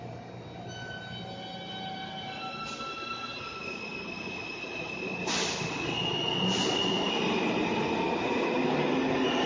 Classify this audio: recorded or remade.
recorded